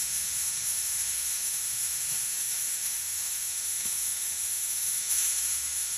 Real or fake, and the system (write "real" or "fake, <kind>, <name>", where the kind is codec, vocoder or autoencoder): fake, autoencoder, DAC-VAE